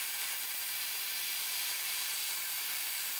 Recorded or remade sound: remade